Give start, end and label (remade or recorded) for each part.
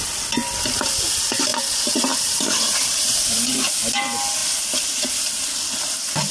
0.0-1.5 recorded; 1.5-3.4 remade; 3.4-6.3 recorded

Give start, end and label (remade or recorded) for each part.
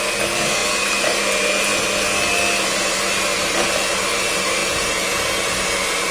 0.0-4.6 recorded; 4.6-5.2 remade; 5.2-6.1 recorded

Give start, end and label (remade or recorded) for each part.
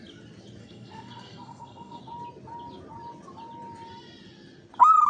0.0-0.6 recorded; 0.6-2.0 remade; 2.0-5.1 recorded